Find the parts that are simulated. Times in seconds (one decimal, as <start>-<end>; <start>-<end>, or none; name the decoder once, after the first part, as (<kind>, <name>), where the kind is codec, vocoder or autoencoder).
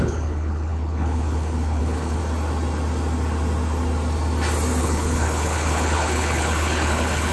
0.0-2.2 (codec, HILCodec); 4.8-7.3